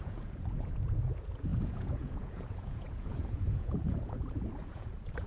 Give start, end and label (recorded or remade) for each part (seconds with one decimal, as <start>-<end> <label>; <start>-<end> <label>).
0.0-5.3 remade